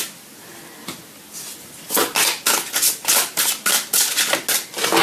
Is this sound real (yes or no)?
yes